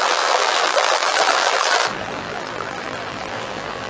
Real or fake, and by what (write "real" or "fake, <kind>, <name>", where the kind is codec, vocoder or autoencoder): fake, vocoder, BigVGAN v2